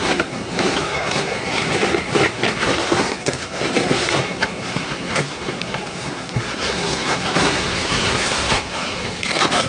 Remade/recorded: remade